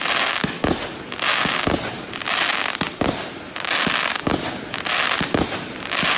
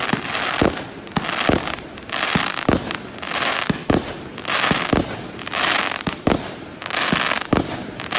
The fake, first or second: second